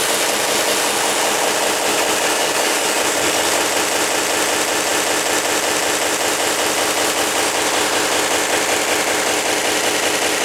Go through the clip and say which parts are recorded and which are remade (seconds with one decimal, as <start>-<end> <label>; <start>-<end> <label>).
0.0-1.9 recorded; 1.9-3.6 remade; 3.6-10.4 recorded